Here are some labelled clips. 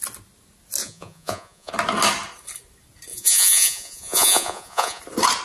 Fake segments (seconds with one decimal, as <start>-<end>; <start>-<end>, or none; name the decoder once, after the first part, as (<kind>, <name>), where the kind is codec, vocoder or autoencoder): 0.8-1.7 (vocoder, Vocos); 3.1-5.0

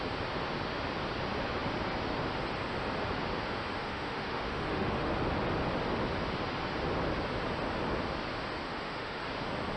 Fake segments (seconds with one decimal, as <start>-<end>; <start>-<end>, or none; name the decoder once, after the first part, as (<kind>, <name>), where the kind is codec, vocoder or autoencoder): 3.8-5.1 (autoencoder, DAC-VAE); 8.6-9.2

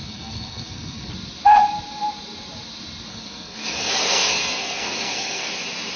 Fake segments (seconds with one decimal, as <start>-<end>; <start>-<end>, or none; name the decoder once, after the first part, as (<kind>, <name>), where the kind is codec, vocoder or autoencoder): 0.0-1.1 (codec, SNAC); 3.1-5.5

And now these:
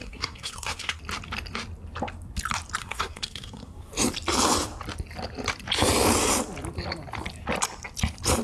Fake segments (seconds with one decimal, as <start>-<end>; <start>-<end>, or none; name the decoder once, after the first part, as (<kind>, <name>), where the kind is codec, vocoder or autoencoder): 0.0-1.0 (codec, SNAC); 2.8-3.9

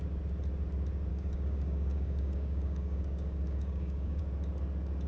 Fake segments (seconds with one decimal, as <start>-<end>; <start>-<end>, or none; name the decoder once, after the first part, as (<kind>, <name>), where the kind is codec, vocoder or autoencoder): 1.1-4.2 (codec, DAC)